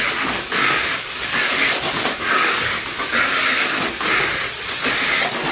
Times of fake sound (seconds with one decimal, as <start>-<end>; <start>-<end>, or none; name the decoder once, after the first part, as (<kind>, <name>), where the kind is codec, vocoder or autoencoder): 0.6-3.9 (codec, DAC)